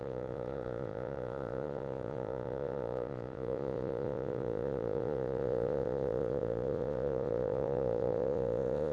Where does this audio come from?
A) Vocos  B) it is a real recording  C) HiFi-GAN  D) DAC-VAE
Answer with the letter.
A